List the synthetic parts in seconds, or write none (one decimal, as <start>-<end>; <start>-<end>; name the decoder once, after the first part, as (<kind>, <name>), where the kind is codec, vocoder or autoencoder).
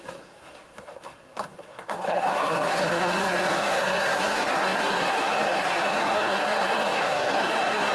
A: 0.0-7.9 (codec, SNAC)